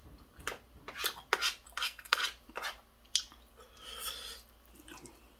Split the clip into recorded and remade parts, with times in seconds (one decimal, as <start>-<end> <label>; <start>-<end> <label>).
0.0-1.8 recorded; 1.8-2.2 remade; 2.2-5.4 recorded